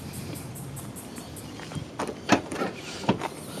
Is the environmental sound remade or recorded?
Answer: recorded